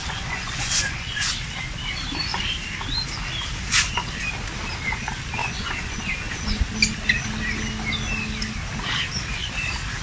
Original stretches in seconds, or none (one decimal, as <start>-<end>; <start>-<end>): 1.3-5.4; 6.6-10.0